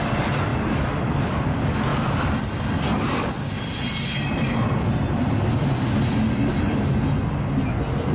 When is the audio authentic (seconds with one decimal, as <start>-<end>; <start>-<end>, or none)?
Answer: 0.0-8.1